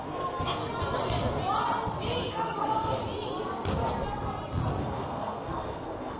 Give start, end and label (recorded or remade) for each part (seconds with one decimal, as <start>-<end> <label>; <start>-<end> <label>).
0.0-0.6 remade; 0.6-2.3 recorded; 2.3-3.0 remade; 3.0-4.8 recorded; 4.8-6.2 remade